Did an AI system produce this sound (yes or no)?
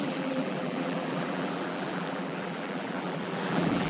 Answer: yes